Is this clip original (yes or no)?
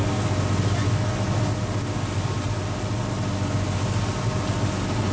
yes